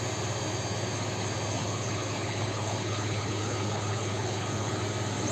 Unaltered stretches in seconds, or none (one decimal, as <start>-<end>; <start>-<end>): 0.0-1.6; 4.8-5.3